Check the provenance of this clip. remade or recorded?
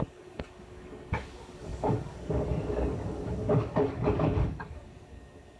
remade